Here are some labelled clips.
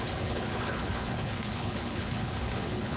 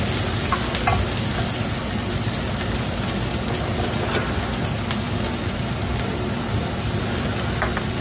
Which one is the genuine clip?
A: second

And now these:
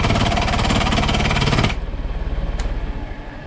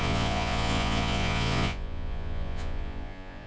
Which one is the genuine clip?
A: first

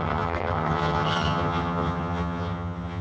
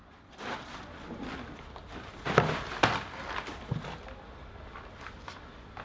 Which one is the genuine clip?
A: second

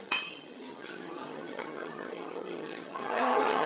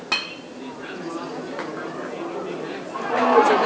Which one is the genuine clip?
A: second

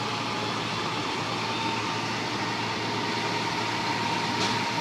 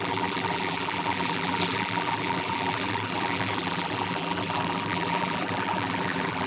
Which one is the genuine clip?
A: first